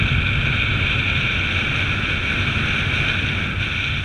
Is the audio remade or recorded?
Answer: recorded